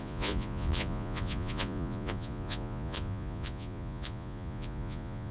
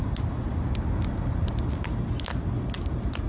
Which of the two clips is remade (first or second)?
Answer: first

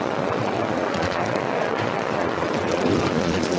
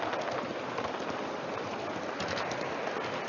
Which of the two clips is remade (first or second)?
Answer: first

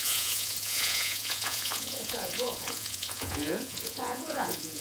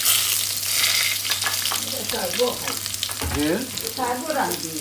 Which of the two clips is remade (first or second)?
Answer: first